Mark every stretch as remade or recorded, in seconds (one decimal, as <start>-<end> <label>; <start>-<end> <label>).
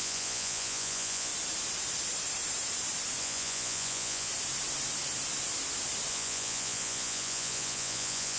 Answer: 0.0-1.3 remade; 1.3-3.2 recorded; 3.2-4.3 remade; 4.3-6.1 recorded; 6.1-8.4 remade